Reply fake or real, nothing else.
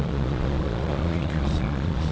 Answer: fake